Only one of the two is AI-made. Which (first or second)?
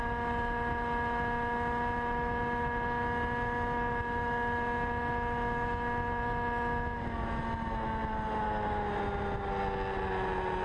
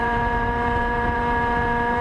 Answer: second